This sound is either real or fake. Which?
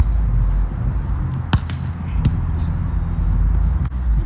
real